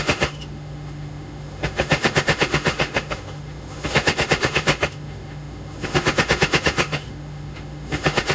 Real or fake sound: fake